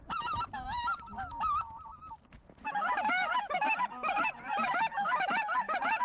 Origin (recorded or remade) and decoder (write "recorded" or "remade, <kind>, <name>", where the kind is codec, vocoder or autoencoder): remade, vocoder, BigVGAN v2